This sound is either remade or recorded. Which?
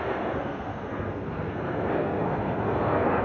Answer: remade